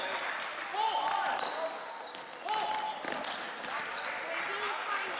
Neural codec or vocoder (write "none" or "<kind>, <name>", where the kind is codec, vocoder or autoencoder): none